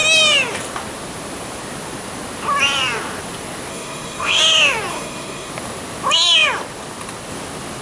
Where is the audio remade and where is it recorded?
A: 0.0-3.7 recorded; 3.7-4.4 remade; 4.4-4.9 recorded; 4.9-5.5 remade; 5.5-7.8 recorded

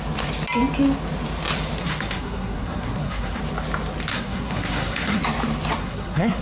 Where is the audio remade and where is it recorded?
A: 0.0-1.8 recorded; 1.8-3.4 remade; 3.4-4.1 recorded; 4.1-5.2 remade; 5.2-5.8 recorded; 5.8-6.4 remade

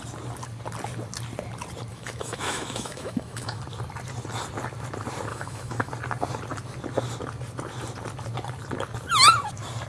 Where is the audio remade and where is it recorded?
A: 0.0-1.9 recorded; 1.9-3.6 remade; 3.6-5.3 recorded; 5.3-5.9 remade; 5.9-9.9 recorded

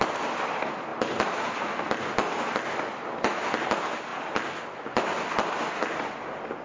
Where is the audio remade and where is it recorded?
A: 0.0-6.6 recorded